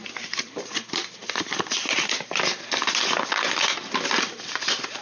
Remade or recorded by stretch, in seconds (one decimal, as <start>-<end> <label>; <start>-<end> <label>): 0.0-1.2 remade; 1.2-4.1 recorded; 4.1-5.0 remade